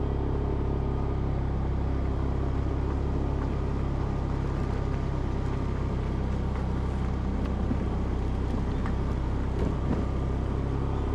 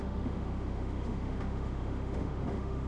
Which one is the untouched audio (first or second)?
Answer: first